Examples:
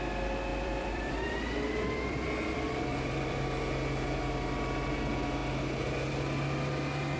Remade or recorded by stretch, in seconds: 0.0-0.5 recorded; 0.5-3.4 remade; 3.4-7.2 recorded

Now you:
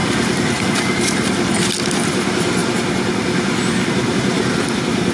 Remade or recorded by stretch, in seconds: 0.0-1.7 remade; 1.7-2.6 recorded; 2.6-5.1 remade